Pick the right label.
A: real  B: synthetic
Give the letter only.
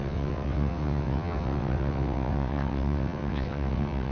B